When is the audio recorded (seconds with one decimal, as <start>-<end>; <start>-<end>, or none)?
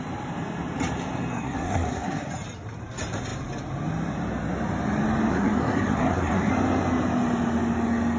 0.0-1.3; 2.3-5.3; 6.5-8.2